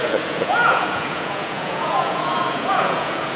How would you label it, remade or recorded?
remade